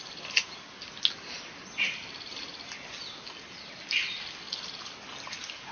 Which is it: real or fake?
real